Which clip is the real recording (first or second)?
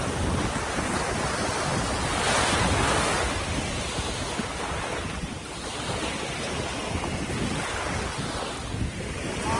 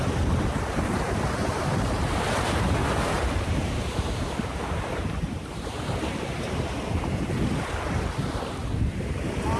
first